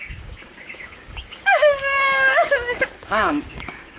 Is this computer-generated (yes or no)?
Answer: yes